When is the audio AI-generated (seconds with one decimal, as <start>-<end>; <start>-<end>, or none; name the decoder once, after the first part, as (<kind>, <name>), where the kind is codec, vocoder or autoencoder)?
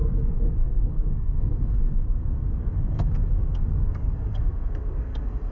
0.0-5.5 (codec, SNAC)